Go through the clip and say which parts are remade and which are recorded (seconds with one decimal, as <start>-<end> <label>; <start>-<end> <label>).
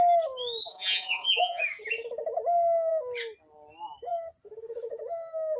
0.0-0.6 recorded; 0.6-1.6 remade; 1.6-5.6 recorded